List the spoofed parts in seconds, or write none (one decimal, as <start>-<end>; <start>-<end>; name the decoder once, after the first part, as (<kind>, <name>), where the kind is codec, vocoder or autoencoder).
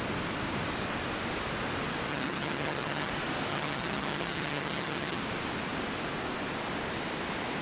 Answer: 2.1-3.1 (vocoder, HiFi-GAN); 3.5-5.2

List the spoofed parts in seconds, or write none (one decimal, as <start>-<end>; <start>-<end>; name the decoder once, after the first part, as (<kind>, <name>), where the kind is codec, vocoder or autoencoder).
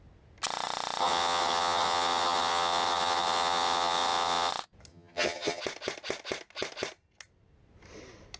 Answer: 1.0-4.5 (vocoder, HiFi-GAN); 4.9-5.6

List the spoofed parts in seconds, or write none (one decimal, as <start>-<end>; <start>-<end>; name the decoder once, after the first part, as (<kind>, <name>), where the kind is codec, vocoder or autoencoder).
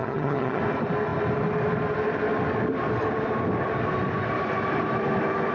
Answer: 0.0-0.6 (vocoder, HiFi-GAN)